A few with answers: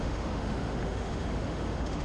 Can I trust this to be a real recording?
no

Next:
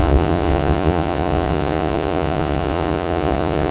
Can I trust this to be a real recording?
no